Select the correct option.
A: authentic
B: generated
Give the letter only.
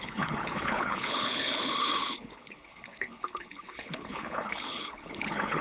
B